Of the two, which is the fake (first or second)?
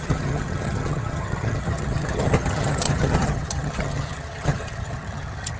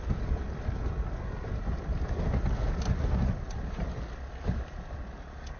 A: first